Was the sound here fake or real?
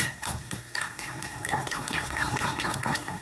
fake